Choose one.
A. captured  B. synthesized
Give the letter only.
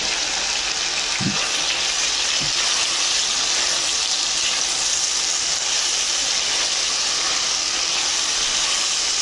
A